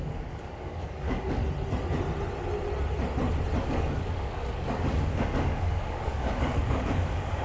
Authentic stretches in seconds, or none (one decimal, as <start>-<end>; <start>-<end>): 1.4-3.6